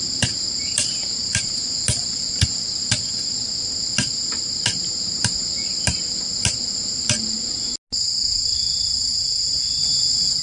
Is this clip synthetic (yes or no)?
no